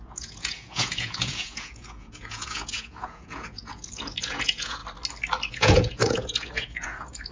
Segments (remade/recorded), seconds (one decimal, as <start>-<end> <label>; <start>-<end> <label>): 0.0-4.8 remade; 4.8-5.5 recorded; 5.5-7.3 remade